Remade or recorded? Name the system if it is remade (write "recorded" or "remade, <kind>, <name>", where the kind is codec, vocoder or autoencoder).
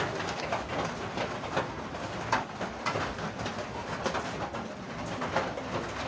recorded